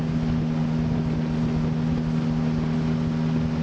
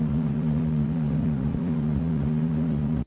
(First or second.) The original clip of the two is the first